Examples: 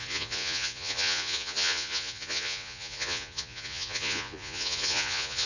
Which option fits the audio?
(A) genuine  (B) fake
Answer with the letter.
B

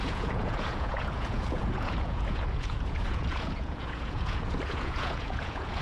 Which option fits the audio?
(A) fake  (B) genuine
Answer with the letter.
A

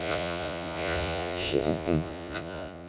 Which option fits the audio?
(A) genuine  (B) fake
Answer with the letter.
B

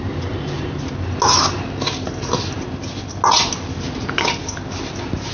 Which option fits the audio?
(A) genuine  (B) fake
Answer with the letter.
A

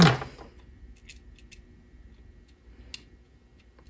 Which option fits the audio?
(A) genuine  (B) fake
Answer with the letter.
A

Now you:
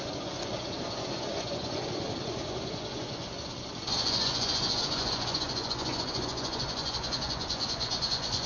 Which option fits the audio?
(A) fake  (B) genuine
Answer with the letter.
A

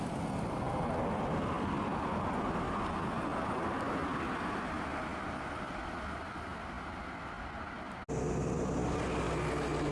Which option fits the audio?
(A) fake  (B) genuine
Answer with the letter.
B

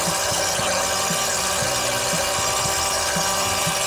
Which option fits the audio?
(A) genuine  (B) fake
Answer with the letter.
A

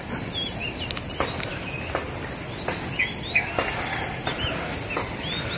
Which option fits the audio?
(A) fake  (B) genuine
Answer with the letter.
B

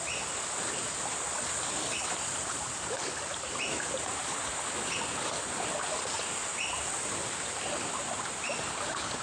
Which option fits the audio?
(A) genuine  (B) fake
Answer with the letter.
A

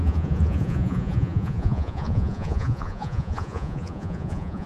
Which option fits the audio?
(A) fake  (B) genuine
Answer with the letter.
A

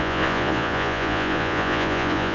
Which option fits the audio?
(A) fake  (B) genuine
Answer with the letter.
A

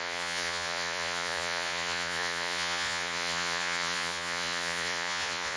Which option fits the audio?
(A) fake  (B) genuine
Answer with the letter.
A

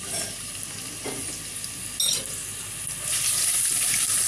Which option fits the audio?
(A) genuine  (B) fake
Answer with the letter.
A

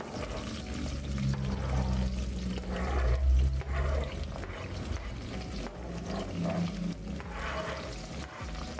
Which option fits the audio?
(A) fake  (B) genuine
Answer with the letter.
B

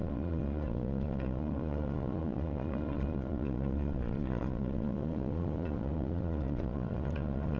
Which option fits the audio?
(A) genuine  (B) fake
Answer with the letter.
B